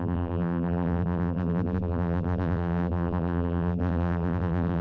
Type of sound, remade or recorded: remade